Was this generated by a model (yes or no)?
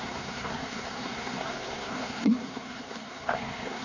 yes